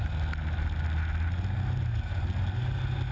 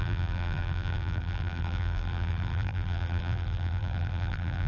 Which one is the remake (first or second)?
second